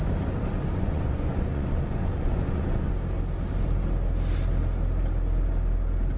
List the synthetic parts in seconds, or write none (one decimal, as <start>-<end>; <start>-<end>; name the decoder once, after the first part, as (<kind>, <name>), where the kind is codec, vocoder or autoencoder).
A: 0.8-2.9 (vocoder, Vocos)

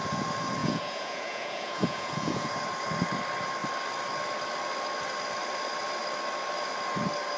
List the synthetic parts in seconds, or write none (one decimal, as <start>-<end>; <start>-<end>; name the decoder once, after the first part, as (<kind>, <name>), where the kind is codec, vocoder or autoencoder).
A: 0.6-2.5 (vocoder, Vocos)

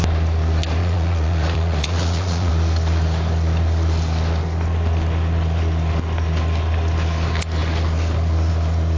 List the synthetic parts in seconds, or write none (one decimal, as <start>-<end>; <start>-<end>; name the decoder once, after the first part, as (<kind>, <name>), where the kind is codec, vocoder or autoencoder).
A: 0.8-2.5 (vocoder, Vocos)

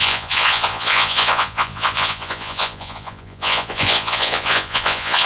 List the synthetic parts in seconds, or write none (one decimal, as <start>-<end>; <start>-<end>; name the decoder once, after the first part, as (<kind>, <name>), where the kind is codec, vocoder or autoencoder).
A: 0.0-5.3 (vocoder, Vocos)

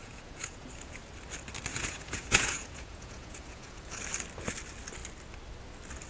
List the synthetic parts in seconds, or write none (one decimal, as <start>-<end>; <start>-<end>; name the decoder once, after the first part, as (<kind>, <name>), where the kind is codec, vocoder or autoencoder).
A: 0.0-0.7 (vocoder, Vocos); 1.7-4.0

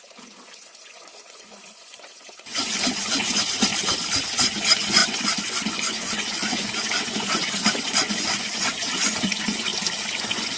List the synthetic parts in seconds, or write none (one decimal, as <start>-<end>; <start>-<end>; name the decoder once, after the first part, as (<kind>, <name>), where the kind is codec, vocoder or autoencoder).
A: 0.0-3.7 (vocoder, Vocos); 4.3-9.7; 10.2-10.6